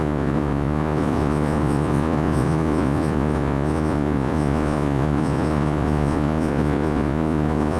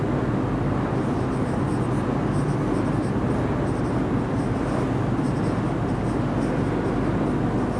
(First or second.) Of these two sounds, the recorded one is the second